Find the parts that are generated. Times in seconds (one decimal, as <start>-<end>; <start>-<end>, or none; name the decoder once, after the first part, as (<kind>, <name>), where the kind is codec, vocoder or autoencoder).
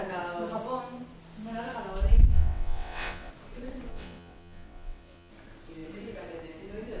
2.3-3.3 (vocoder, WaveNeXt); 3.9-5.3